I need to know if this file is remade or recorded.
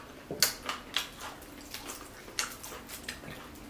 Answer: recorded